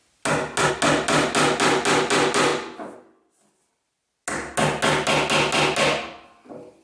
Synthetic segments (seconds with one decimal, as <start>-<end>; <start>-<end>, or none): none